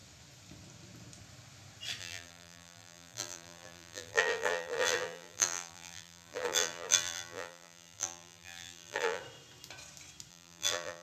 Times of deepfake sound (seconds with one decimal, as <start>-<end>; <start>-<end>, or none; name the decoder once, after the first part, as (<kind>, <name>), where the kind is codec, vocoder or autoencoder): 2.0-9.2 (vocoder, BigVGAN v2); 10.3-11.0